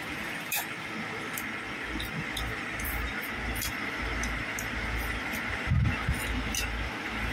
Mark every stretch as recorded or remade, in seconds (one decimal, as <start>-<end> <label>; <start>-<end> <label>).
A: 0.0-0.9 remade; 0.9-7.3 recorded